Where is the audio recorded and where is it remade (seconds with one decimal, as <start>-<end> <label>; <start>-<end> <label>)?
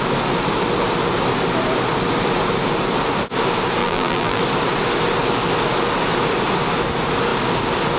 0.0-3.8 recorded; 3.8-4.4 remade; 4.4-8.0 recorded